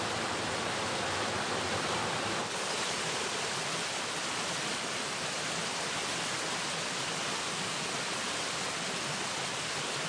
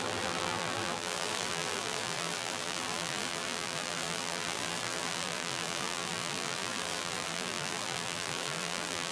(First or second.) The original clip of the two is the first